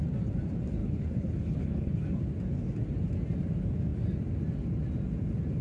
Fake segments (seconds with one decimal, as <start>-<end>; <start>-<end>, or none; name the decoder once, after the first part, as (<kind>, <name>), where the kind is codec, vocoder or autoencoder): 0.8-1.9 (codec, HILCodec)